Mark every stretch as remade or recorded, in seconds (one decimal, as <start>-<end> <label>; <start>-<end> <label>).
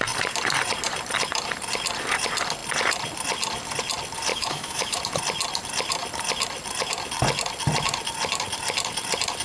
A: 0.0-4.3 recorded; 4.3-5.0 remade; 5.0-9.4 recorded